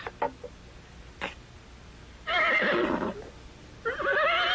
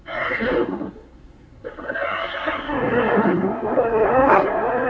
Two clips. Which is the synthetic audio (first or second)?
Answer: second